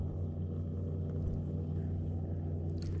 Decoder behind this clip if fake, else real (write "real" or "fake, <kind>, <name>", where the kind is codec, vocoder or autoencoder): real